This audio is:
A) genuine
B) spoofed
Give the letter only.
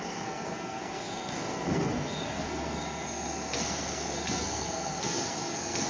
B